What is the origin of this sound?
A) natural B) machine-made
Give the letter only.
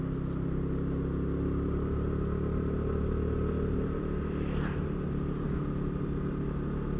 A